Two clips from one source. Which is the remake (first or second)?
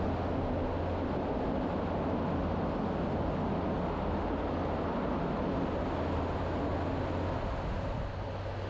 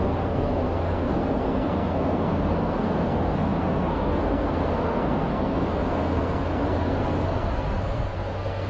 second